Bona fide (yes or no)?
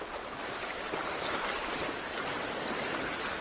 yes